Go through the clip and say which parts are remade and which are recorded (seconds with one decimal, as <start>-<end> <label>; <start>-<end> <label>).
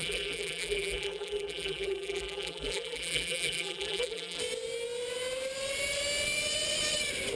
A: 0.0-4.4 remade; 4.4-7.4 recorded